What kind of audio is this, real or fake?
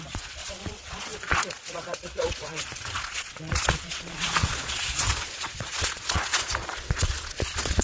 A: fake